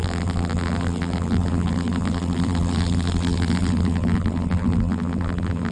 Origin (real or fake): fake